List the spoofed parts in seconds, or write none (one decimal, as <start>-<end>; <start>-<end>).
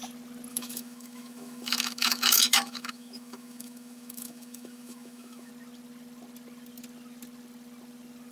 0.5-5.5